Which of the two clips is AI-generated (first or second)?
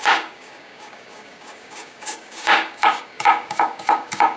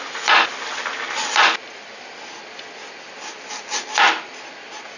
first